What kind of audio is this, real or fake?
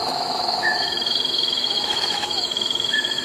fake